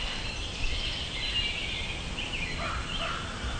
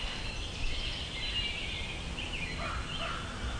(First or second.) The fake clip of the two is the first